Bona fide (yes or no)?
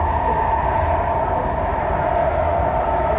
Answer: yes